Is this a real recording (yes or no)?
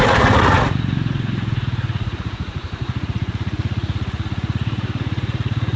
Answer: no